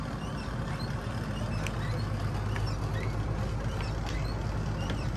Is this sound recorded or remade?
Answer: recorded